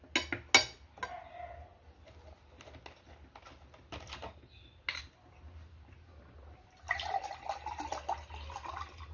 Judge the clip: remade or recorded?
recorded